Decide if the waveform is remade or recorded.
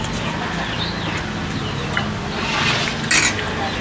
recorded